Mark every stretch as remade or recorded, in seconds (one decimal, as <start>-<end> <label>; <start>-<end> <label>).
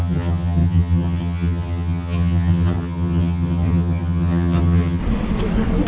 0.0-5.0 remade; 5.0-5.9 recorded